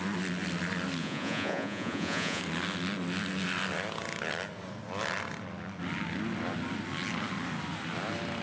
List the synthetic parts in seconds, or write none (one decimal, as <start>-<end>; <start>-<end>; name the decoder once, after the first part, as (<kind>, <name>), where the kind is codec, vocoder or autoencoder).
1.0-2.4 (vocoder, Vocos)